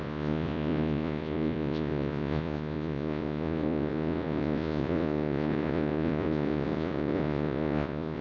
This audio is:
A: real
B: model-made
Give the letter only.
B